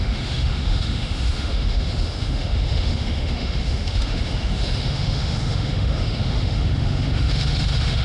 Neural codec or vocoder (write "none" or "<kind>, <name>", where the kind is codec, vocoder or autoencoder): autoencoder, DAC-VAE